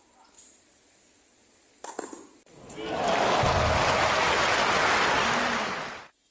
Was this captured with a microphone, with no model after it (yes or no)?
yes